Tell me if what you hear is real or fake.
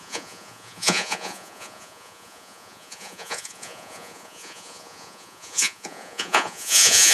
fake